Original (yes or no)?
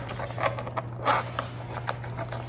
yes